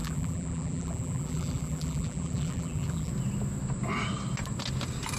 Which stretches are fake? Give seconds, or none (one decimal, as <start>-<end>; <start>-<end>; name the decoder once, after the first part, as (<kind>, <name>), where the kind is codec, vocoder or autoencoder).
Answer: 0.0-3.1 (vocoder, BigVGAN v2)